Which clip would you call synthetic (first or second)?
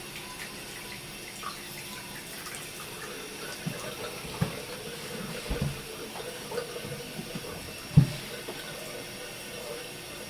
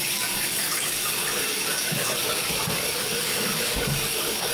second